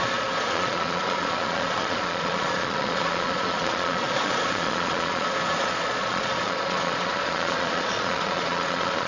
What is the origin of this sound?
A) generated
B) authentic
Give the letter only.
A